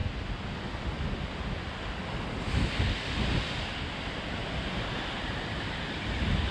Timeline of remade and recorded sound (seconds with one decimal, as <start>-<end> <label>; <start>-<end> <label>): 0.0-6.5 recorded